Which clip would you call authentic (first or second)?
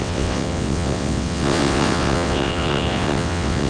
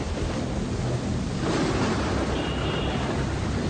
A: second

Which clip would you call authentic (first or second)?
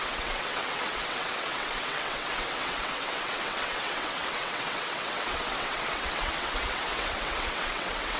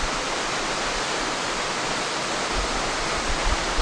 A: second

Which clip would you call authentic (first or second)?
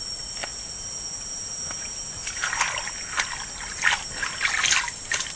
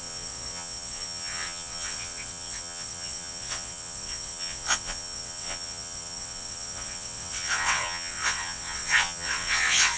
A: first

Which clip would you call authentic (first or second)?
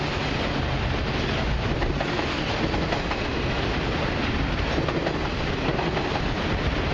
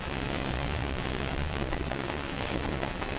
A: first